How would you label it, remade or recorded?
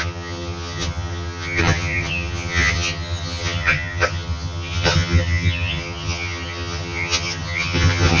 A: remade